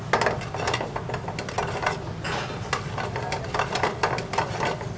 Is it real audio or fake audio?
real